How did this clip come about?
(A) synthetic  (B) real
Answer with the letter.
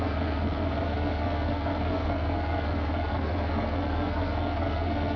A